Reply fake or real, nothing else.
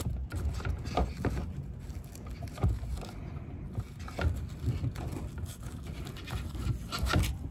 real